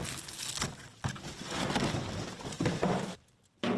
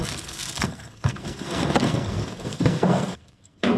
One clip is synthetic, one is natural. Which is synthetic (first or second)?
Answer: second